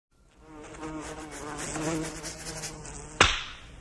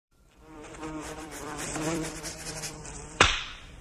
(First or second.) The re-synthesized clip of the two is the second